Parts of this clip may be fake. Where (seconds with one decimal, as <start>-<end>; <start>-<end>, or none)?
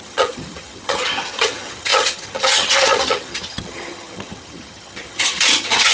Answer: 0.0-5.9